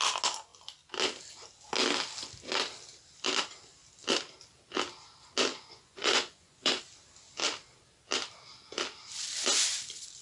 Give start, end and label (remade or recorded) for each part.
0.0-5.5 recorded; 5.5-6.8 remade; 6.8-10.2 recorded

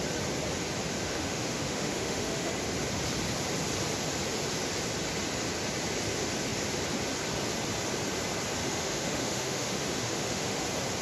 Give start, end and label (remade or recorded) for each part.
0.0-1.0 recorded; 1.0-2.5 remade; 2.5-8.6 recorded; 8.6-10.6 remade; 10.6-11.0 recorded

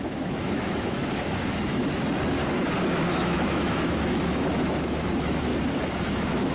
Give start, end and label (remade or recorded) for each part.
0.0-1.8 remade; 1.8-3.1 recorded; 3.1-5.5 remade; 5.5-6.1 recorded; 6.1-6.5 remade

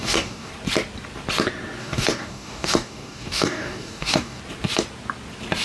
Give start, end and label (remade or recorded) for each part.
0.0-0.5 remade; 0.5-1.8 recorded; 1.8-4.4 remade; 4.4-5.6 recorded

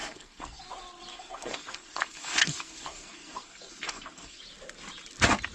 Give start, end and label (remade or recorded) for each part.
0.0-0.6 remade; 0.6-1.1 recorded; 1.1-4.4 remade; 4.4-5.5 recorded

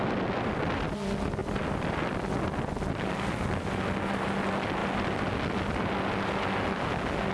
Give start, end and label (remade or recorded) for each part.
0.0-7.3 recorded

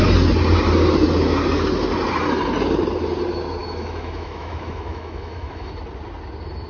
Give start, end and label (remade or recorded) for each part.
0.0-3.6 recorded; 3.6-5.7 remade; 5.7-6.7 recorded